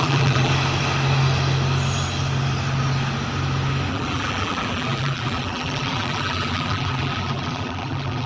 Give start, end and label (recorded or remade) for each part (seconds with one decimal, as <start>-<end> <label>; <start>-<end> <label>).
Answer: 0.0-0.5 remade; 0.5-3.9 recorded; 3.9-8.3 remade